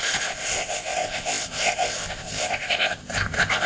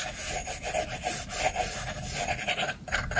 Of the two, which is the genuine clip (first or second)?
second